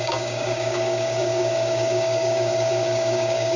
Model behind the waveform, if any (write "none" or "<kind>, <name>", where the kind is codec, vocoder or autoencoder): codec, DAC